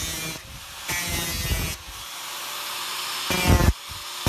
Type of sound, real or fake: real